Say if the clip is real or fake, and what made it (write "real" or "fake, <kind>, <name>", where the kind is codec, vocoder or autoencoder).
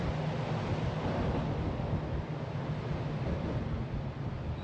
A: real